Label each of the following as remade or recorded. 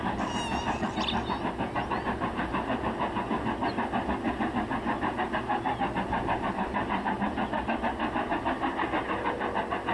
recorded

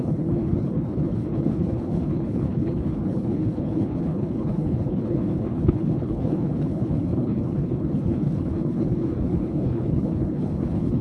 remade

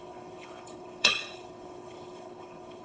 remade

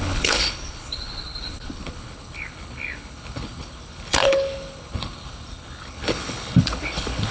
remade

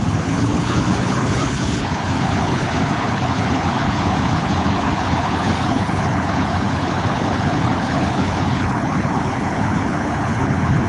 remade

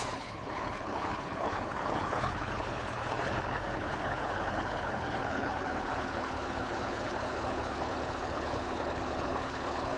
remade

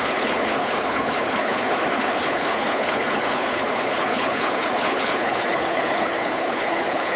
remade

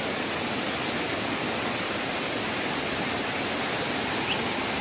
recorded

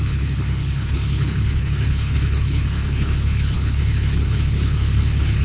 remade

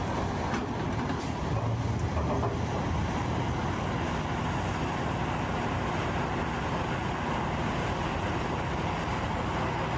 recorded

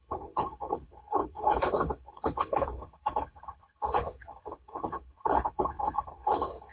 remade